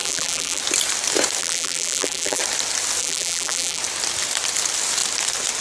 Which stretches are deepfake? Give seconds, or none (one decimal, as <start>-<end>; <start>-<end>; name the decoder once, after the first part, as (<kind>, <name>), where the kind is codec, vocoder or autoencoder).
0.0-0.6 (vocoder, BigVGAN v2); 1.4-2.4; 3.0-3.8

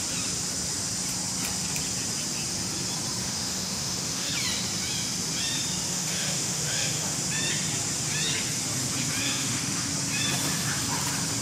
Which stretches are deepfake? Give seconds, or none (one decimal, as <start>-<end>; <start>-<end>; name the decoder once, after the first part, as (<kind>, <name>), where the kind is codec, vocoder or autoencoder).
3.2-4.3 (autoencoder, DAC-VAE); 5.9-7.2; 9.2-9.9

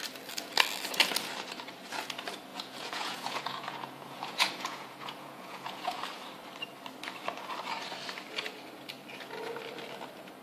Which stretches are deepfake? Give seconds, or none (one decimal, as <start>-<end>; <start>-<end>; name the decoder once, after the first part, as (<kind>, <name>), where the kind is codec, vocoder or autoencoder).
2.5-6.0 (vocoder, Vocos)

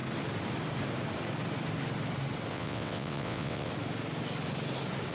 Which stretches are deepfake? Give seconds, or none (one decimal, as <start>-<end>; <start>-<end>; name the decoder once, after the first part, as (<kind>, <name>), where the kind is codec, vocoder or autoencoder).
2.5-3.7 (vocoder, WaveNeXt)